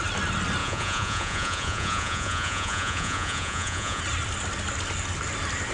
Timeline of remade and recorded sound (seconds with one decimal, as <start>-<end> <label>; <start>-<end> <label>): 0.0-0.6 recorded; 0.6-4.0 remade; 4.0-5.7 recorded